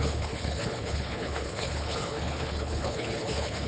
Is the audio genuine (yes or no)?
no